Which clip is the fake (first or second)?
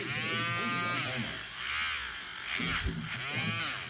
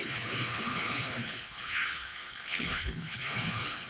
second